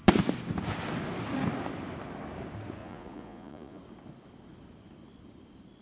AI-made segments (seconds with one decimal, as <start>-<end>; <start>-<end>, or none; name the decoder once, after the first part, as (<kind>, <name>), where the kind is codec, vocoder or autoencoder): 2.8-3.8 (vocoder, Vocos)